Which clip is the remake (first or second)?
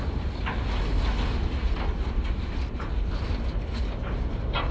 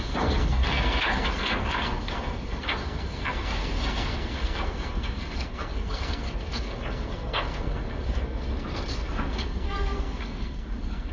second